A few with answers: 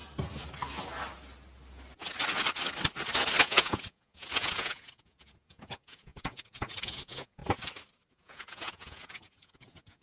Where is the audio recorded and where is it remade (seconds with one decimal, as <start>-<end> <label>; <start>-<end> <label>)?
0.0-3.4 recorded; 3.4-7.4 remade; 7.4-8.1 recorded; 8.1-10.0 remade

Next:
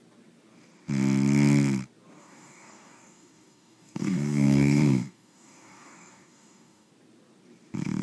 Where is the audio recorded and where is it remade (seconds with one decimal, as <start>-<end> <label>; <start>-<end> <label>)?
0.0-2.2 recorded; 2.2-6.9 remade; 6.9-8.0 recorded

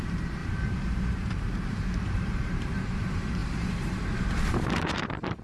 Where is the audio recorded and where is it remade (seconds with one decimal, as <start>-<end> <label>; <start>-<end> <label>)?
0.0-0.4 remade; 0.4-1.1 recorded; 1.1-5.4 remade